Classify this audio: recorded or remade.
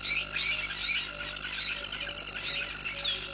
recorded